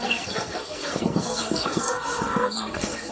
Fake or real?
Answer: fake